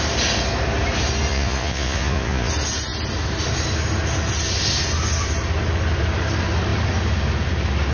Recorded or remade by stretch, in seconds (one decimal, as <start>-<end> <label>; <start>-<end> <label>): 0.0-1.3 recorded; 1.3-2.5 remade; 2.5-7.9 recorded